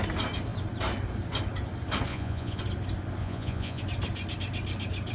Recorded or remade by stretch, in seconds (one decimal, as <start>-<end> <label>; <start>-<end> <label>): 0.0-2.1 recorded; 2.1-2.6 remade; 2.6-3.2 recorded; 3.2-3.8 remade; 3.8-5.1 recorded